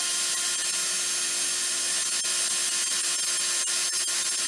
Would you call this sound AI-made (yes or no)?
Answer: no